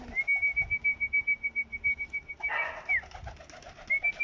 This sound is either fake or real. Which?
real